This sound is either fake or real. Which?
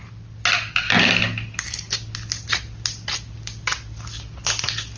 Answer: real